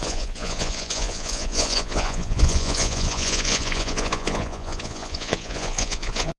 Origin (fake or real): fake